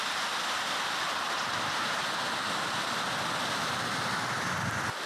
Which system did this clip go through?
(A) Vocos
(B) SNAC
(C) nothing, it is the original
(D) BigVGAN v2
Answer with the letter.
C